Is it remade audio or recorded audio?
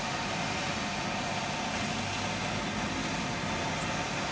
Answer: recorded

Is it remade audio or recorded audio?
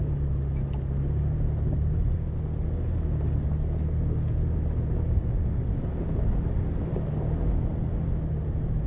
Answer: recorded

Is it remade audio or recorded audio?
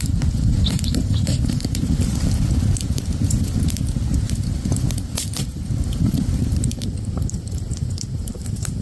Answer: remade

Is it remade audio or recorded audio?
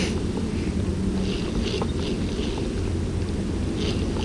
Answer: recorded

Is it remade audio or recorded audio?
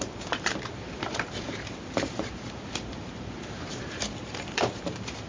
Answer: remade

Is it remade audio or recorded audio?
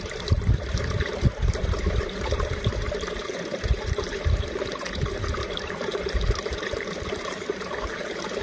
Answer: remade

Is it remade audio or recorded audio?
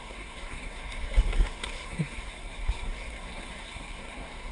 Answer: remade